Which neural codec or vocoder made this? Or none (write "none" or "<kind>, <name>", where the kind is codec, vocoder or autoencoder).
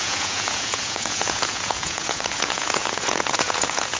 vocoder, Vocos